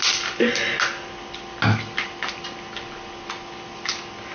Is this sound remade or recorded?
recorded